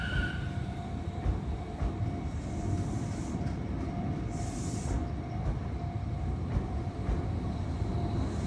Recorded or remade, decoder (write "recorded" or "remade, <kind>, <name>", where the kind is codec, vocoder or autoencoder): recorded